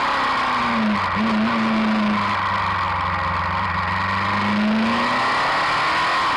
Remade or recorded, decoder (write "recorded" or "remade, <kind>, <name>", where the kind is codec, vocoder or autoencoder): recorded